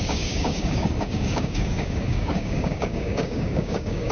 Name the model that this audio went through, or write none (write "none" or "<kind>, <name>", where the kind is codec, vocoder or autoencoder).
codec, DAC